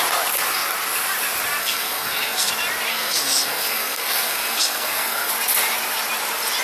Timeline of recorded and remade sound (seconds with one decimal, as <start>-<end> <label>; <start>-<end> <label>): 0.0-1.6 recorded; 1.6-2.5 remade; 2.5-2.9 recorded; 2.9-5.3 remade; 5.3-6.6 recorded